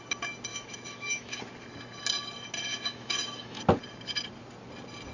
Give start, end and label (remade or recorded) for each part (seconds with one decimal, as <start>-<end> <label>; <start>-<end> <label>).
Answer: 0.0-0.5 recorded; 0.5-1.4 remade; 1.4-2.7 recorded; 2.7-3.6 remade; 3.6-5.1 recorded